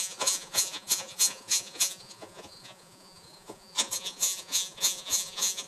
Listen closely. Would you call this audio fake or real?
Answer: fake